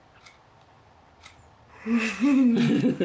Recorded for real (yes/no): yes